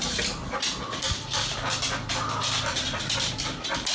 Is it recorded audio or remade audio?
recorded